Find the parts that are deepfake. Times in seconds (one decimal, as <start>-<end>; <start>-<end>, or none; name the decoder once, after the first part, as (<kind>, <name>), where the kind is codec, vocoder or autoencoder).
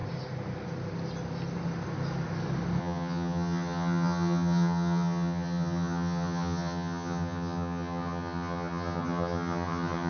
2.8-10.1 (vocoder, HiFi-GAN)